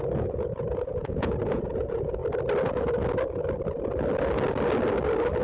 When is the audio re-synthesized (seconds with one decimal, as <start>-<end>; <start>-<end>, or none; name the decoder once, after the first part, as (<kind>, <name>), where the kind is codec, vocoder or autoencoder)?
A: 0.0-2.2 (vocoder, Vocos)